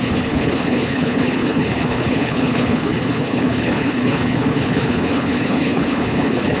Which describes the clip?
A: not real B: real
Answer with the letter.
A